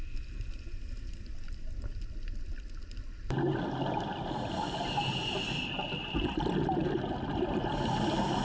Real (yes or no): yes